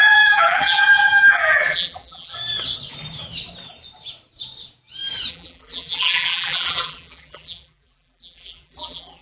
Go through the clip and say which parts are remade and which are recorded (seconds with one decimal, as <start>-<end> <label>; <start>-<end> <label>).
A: 0.0-2.4 remade; 2.4-5.3 recorded; 5.3-9.2 remade